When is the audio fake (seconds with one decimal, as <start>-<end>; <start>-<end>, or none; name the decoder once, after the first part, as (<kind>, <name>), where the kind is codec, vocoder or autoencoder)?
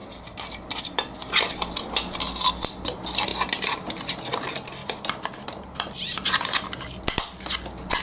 0.0-1.5 (vocoder, BigVGAN v2); 3.3-4.0; 4.8-8.0